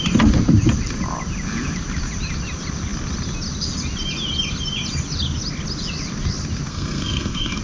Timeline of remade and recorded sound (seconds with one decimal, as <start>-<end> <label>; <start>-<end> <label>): 0.0-6.7 recorded; 6.7-7.6 remade